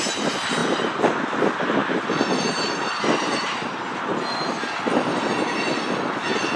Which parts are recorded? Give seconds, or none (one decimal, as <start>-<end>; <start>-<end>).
0.0-0.6; 1.1-1.8; 4.1-6.6